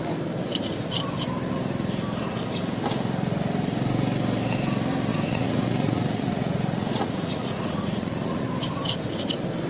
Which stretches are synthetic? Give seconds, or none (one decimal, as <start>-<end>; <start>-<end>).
5.1-8.5